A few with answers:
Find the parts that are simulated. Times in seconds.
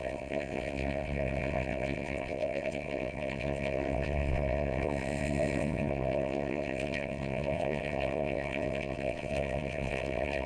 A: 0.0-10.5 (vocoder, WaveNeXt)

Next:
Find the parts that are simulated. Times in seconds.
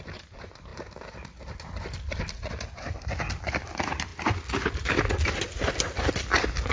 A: none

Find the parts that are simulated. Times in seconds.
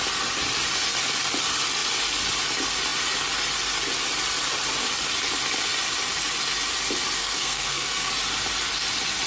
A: 7.2-8.1 (codec, SNAC)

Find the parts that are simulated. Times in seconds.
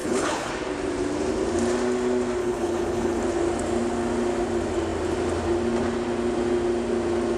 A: 0.0-0.5 (codec, HILCodec); 2.4-3.2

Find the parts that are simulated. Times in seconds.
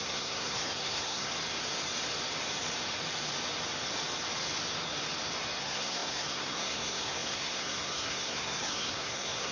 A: 0.0-1.3 (codec, SNAC); 5.6-9.5